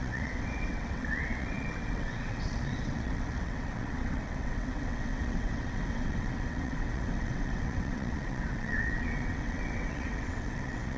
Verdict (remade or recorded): remade